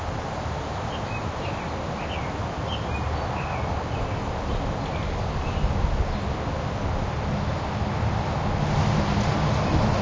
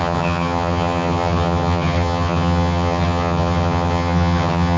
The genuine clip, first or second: first